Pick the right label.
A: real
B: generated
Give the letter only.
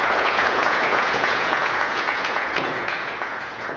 B